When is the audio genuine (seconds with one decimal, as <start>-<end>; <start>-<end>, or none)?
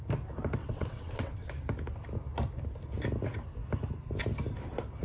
0.0-0.6; 1.5-5.0